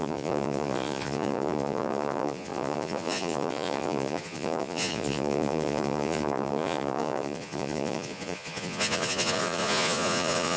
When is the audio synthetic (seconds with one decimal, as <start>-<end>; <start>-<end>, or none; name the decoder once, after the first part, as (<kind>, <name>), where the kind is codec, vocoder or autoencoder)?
0.0-10.6 (vocoder, Vocos)